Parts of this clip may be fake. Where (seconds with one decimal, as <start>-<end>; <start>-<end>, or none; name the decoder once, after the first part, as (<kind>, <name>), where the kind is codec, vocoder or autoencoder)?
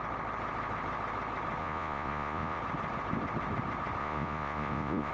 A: 1.6-2.6 (vocoder, Vocos); 4.0-5.1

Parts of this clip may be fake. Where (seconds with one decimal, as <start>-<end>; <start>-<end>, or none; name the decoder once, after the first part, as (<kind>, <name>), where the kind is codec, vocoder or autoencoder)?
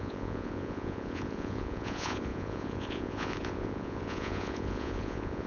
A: 0.0-5.5 (vocoder, Vocos)